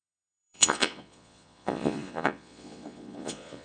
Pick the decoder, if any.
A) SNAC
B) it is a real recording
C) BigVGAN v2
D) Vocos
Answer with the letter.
D